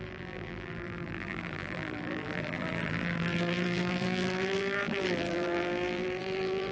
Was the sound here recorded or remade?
remade